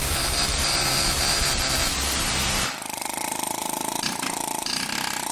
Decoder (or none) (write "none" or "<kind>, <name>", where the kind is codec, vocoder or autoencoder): vocoder, BigVGAN v2